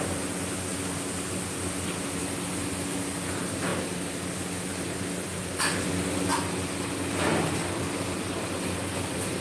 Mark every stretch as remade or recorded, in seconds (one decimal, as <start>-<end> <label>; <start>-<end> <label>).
0.0-9.4 recorded